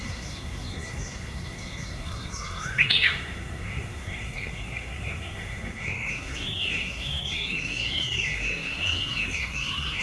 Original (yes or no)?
no